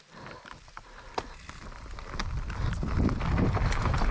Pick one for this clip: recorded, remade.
recorded